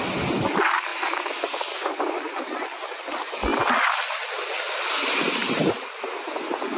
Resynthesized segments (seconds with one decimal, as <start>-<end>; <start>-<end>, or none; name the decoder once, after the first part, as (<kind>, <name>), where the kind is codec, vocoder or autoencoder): none